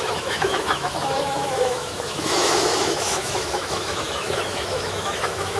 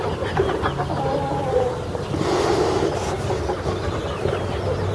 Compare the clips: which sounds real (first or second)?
second